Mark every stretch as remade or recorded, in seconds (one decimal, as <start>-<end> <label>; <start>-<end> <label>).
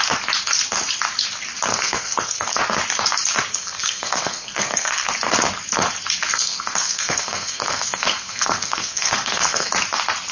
0.0-1.7 recorded; 1.7-2.6 remade; 2.6-3.5 recorded; 3.5-5.1 remade; 5.1-6.3 recorded; 6.3-9.7 remade; 9.7-10.3 recorded